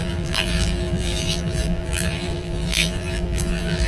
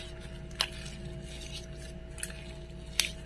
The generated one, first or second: first